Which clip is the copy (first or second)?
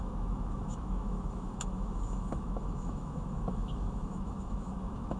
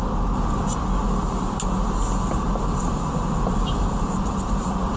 first